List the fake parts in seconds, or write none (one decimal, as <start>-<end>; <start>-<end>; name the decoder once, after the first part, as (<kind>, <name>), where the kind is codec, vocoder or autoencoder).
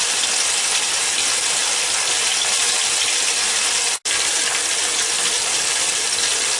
none